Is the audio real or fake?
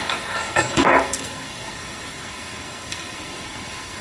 fake